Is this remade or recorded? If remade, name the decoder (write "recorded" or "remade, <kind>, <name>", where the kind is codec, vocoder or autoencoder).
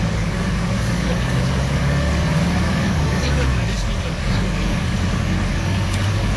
remade, codec, DAC